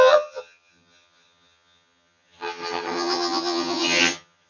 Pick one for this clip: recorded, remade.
remade